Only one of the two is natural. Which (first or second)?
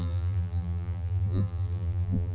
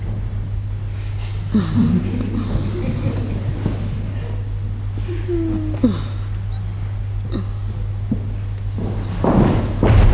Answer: second